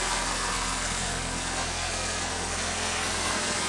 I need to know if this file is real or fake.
fake